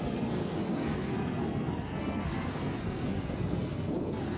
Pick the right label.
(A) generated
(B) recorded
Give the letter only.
A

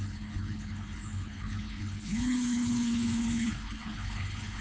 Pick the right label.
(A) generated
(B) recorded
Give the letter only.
A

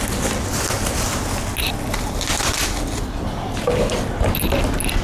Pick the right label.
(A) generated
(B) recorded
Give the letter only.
B